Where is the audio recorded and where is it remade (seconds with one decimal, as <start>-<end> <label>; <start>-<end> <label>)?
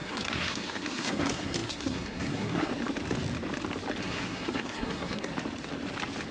0.0-2.7 remade; 2.7-4.0 recorded; 4.0-5.3 remade; 5.3-6.3 recorded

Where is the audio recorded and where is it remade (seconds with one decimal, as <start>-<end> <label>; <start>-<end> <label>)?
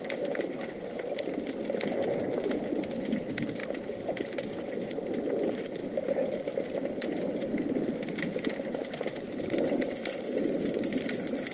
0.0-11.5 recorded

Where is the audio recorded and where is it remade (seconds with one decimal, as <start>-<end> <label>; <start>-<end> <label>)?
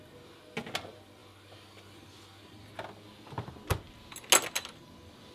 0.0-5.3 recorded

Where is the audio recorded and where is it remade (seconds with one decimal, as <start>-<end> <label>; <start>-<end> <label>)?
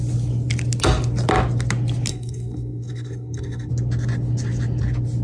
0.0-2.1 recorded; 2.1-3.7 remade; 3.7-5.2 recorded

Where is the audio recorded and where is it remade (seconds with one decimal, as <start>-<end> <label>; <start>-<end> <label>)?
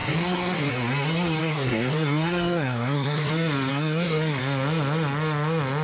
0.0-0.7 remade; 0.7-1.4 recorded; 1.4-3.3 remade; 3.3-3.7 recorded; 3.7-4.4 remade; 4.4-5.8 recorded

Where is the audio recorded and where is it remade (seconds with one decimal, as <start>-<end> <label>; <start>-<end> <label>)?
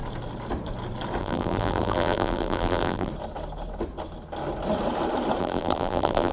0.0-1.2 recorded; 1.2-3.1 remade; 3.1-5.4 recorded; 5.4-6.3 remade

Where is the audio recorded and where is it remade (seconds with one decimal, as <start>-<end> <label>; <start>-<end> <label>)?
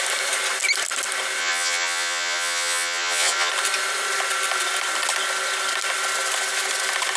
0.0-1.4 recorded; 1.4-3.5 remade; 3.5-7.2 recorded